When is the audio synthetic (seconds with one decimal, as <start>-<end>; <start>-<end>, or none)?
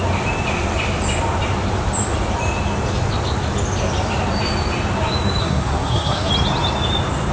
5.4-6.3